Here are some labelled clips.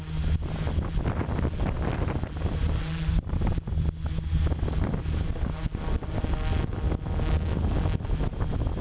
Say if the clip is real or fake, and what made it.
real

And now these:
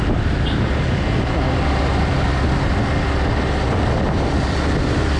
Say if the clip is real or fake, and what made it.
real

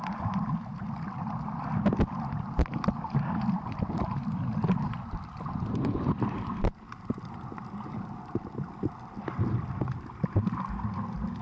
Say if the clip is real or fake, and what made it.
real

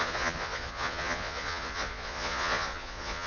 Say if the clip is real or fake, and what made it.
fake, vocoder, Vocos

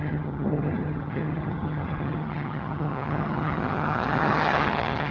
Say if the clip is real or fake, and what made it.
fake, vocoder, HiFi-GAN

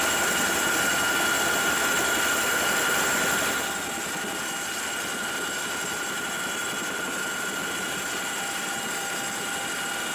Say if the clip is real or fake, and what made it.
real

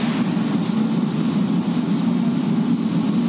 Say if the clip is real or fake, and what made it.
real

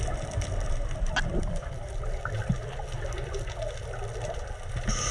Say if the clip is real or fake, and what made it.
real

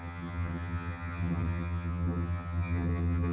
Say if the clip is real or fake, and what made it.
fake, vocoder, HiFi-GAN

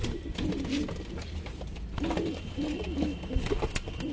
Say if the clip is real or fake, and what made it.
real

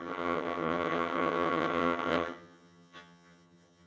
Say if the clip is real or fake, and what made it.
fake, vocoder, HiFi-GAN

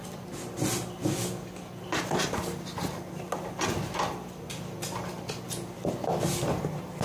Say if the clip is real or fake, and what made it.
real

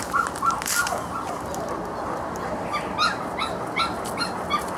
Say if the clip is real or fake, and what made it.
real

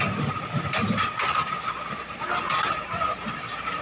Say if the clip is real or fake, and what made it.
fake, vocoder, BigVGAN v2